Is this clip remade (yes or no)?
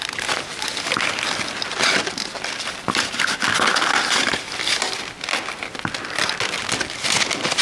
no